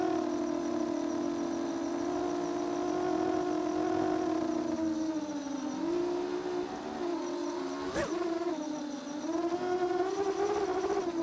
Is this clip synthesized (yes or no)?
no